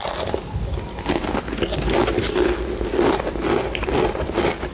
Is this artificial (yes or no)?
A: no